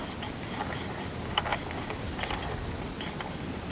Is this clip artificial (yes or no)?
no